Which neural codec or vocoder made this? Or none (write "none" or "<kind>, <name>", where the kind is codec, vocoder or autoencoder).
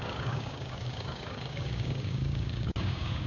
codec, DAC